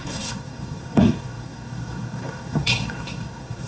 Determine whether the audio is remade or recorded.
remade